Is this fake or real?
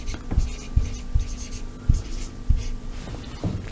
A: real